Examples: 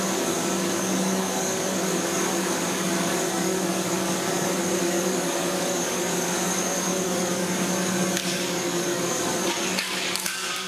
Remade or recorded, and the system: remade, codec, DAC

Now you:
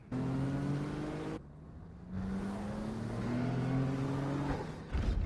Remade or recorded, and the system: recorded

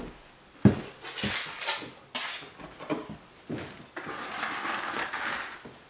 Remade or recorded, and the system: recorded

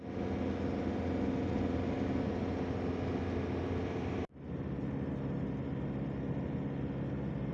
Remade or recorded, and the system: recorded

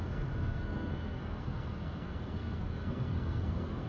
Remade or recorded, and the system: remade, codec, SNAC